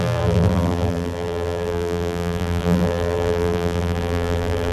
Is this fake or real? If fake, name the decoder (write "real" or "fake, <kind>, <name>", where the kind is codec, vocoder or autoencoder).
fake, vocoder, BigVGAN v2